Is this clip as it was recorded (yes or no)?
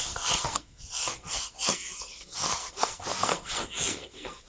no